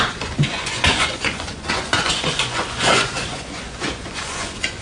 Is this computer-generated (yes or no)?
yes